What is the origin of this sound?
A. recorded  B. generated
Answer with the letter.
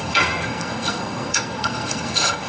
B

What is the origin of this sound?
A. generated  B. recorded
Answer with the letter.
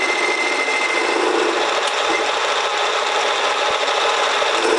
B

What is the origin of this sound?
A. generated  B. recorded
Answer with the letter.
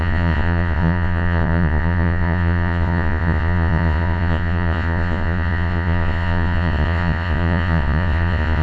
A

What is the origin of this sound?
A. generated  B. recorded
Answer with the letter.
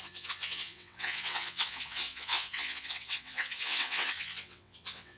A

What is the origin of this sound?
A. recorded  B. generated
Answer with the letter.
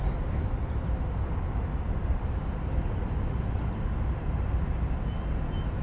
A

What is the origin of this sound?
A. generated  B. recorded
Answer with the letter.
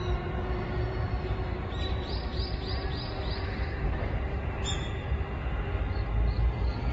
B